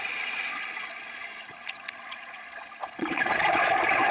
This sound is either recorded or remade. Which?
remade